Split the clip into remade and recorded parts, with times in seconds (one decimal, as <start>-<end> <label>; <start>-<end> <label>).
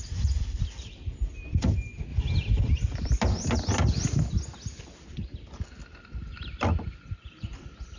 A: 0.0-8.0 recorded